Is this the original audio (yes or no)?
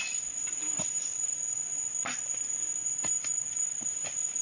yes